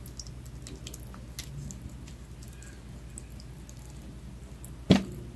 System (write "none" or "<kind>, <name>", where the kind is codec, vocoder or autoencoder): none